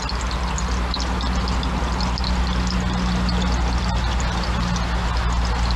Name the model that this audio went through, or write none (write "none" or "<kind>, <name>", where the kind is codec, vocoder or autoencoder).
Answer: none